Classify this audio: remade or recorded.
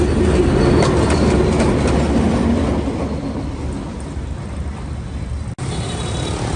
recorded